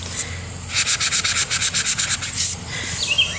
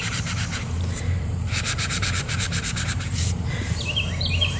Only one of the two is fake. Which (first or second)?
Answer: second